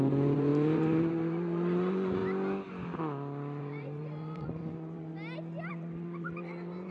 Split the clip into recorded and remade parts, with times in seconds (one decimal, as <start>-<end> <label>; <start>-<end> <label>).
0.0-2.2 remade; 2.2-3.6 recorded; 3.6-5.1 remade; 5.1-5.7 recorded; 5.7-6.9 remade

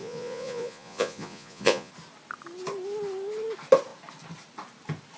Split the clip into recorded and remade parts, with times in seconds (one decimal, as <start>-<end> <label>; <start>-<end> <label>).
0.0-1.9 remade; 1.9-5.2 recorded

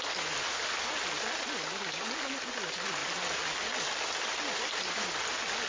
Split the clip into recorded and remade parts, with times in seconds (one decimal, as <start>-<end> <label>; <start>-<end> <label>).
0.0-5.7 recorded

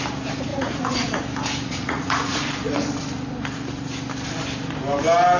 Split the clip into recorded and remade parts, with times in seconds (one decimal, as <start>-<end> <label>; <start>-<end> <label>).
0.0-0.5 recorded; 0.5-1.2 remade; 1.2-1.7 recorded; 1.7-2.5 remade; 2.5-5.4 recorded

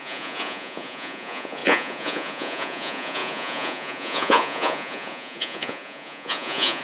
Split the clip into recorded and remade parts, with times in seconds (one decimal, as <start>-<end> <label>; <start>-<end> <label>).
0.0-6.8 remade

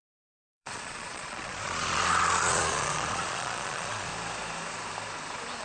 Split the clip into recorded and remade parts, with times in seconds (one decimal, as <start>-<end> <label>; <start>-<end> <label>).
0.0-4.1 remade; 4.1-5.6 recorded

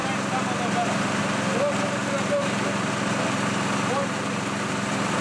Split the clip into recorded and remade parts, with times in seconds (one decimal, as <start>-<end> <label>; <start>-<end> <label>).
0.0-5.2 recorded

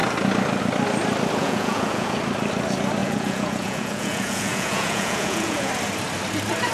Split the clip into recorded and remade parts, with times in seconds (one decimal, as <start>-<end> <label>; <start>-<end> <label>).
0.0-1.4 recorded; 1.4-2.2 remade; 2.2-3.0 recorded; 3.0-5.7 remade; 5.7-6.7 recorded